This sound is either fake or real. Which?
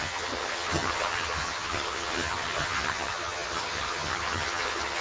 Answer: fake